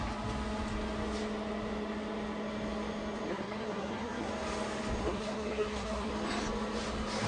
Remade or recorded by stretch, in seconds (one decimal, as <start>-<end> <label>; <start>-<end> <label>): 0.0-3.3 recorded; 3.3-4.3 remade; 4.3-5.0 recorded; 5.0-6.1 remade; 6.1-7.3 recorded

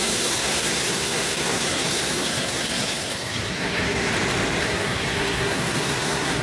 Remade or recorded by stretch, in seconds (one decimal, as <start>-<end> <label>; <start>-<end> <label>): 0.0-4.1 remade; 4.1-4.6 recorded; 4.6-6.4 remade